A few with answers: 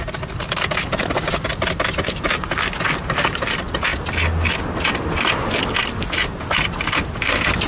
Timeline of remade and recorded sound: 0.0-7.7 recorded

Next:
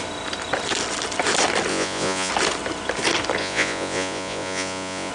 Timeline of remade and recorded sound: 0.0-1.7 recorded; 1.7-2.3 remade; 2.3-3.4 recorded; 3.4-5.1 remade

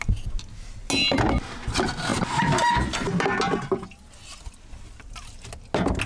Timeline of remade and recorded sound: 0.0-6.1 recorded

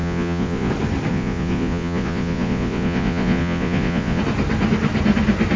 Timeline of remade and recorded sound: 0.0-0.7 remade; 0.7-1.1 recorded; 1.1-4.2 remade; 4.2-5.6 recorded